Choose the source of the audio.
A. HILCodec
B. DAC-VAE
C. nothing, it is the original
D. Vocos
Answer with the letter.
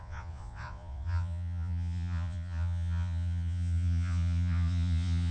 D